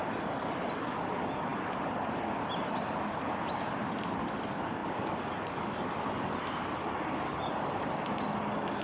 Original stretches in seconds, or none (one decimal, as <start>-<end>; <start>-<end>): 0.0-8.8